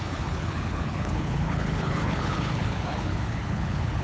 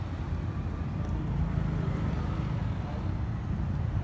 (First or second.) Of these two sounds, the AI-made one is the first